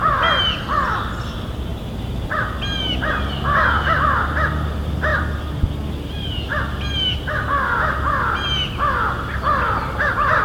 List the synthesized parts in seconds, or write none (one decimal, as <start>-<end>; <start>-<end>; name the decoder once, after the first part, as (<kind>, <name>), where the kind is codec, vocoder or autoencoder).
none